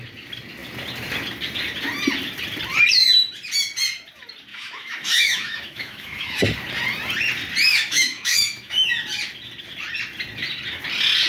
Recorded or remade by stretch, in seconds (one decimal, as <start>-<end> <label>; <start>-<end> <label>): 0.0-4.5 recorded; 4.5-6.4 remade; 6.4-7.7 recorded; 7.7-8.9 remade; 8.9-11.3 recorded